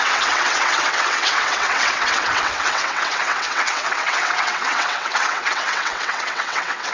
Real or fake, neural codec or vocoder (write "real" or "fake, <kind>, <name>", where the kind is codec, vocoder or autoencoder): fake, vocoder, WaveNeXt